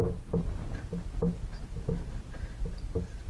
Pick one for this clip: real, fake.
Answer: real